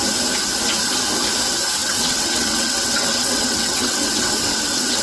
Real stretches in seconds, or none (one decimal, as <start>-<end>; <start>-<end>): 0.0-1.8